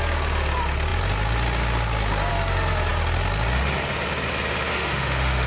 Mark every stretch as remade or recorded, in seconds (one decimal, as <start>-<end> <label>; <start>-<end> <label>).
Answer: 0.0-4.7 recorded; 4.7-5.5 remade